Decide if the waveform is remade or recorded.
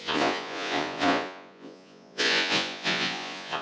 remade